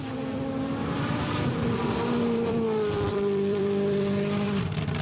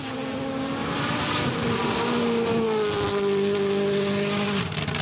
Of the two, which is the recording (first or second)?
second